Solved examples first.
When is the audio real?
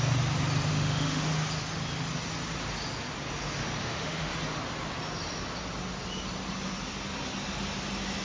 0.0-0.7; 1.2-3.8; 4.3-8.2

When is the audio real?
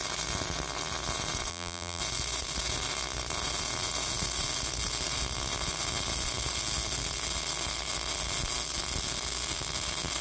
0.0-1.5; 2.0-10.2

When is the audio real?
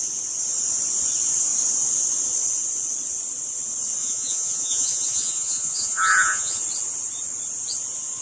0.0-4.0; 6.6-8.2